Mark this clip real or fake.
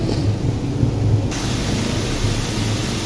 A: real